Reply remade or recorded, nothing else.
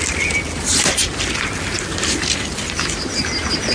remade